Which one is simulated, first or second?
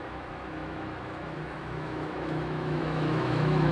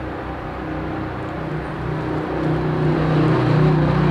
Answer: first